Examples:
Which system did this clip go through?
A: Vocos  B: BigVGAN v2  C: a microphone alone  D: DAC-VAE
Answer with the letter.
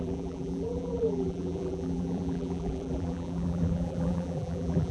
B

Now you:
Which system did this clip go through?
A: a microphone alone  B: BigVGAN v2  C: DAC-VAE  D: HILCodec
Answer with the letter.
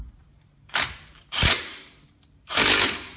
B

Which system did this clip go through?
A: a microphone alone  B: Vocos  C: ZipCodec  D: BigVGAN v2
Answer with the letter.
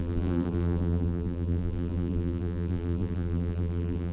D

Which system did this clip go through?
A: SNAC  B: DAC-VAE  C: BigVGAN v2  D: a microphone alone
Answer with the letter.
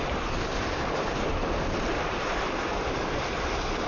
C